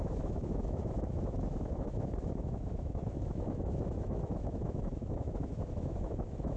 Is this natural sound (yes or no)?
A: no